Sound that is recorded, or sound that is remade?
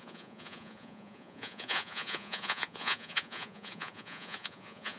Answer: remade